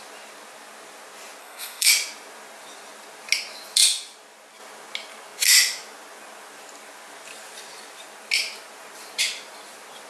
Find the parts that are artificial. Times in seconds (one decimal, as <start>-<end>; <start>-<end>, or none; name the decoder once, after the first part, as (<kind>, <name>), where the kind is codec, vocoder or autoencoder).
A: 1.4-1.9 (codec, SNAC)